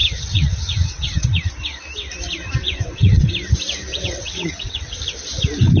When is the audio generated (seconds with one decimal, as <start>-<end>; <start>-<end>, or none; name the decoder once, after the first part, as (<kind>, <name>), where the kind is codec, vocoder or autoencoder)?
0.0-1.5 (vocoder, WaveNeXt); 2.6-3.3; 3.9-4.9